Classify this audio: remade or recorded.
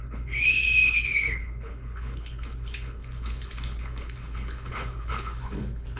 remade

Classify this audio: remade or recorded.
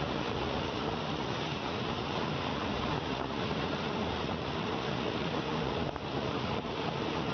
remade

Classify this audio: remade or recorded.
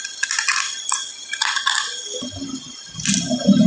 recorded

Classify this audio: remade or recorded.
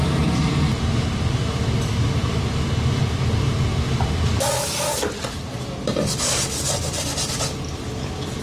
recorded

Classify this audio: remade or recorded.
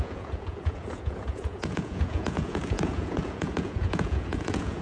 remade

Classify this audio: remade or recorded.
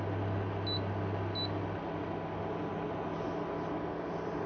recorded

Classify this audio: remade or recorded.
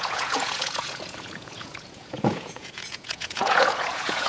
remade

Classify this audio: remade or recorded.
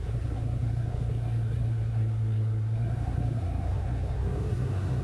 remade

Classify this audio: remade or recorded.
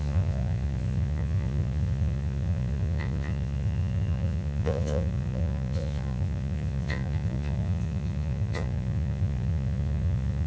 remade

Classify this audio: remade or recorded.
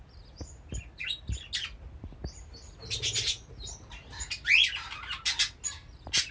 recorded